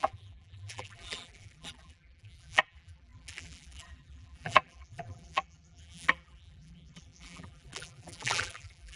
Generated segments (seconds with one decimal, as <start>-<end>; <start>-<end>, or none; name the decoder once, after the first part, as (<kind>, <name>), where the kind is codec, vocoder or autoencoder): 0.0-9.0 (vocoder, BigVGAN v2)